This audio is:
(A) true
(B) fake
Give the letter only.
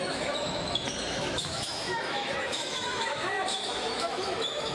B